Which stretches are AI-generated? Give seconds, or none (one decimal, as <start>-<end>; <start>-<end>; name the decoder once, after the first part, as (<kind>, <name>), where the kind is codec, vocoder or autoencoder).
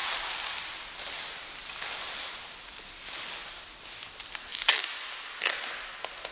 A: none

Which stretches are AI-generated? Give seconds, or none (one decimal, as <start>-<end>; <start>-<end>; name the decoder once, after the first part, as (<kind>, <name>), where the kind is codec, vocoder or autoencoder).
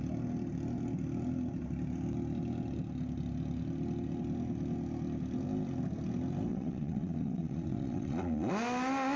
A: 6.5-8.5 (vocoder, WaveNeXt)